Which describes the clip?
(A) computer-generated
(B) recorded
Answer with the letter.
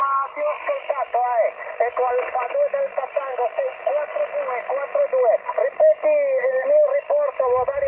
B